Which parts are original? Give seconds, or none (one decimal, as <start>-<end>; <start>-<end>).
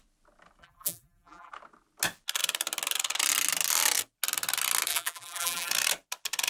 0.0-0.6; 1.5-4.9; 5.7-6.5